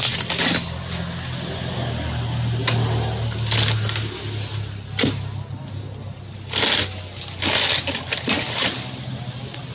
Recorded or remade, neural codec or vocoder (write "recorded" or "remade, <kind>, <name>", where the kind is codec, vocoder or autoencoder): recorded